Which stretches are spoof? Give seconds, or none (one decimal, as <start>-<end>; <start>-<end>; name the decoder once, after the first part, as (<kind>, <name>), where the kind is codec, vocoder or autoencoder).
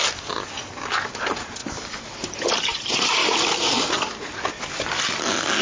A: 3.2-4.6 (vocoder, BigVGAN v2)